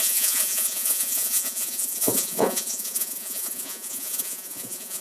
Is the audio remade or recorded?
remade